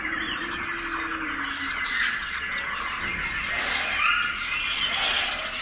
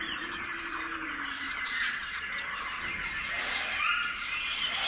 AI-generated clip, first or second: second